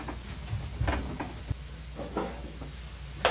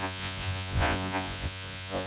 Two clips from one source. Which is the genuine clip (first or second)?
first